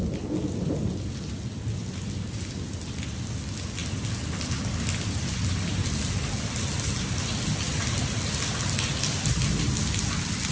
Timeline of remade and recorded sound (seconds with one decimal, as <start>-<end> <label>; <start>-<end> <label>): 0.0-10.5 recorded